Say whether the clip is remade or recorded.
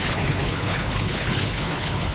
remade